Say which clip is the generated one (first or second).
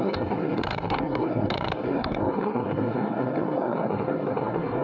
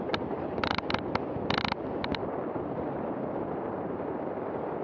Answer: first